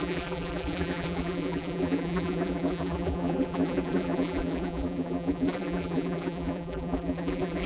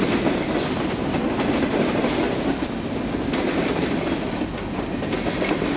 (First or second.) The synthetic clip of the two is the first